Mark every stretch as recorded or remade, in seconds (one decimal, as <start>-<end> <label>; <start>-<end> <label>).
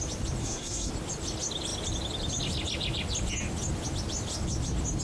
0.0-0.4 recorded; 0.4-0.9 remade; 0.9-5.0 recorded